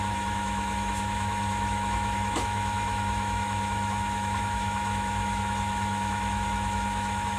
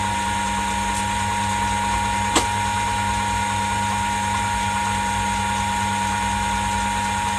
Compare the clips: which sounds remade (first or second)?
first